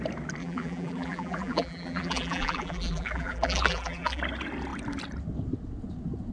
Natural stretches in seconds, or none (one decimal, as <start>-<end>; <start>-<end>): 0.0-0.4; 4.2-6.3